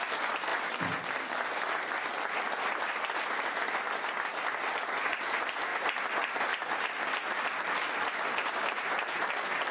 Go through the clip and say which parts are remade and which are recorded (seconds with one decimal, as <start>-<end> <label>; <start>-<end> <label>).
0.0-9.7 recorded